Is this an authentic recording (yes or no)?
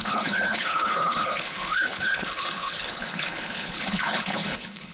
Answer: no